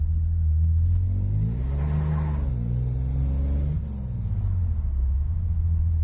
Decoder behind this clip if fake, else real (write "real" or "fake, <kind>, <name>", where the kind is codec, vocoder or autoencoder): real